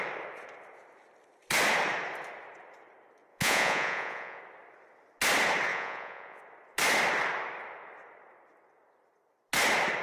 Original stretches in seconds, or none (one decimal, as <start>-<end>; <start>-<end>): 0.0-3.3; 4.4-5.7; 6.4-10.0